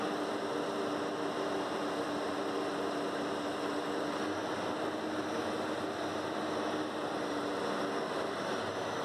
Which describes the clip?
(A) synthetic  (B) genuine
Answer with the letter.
B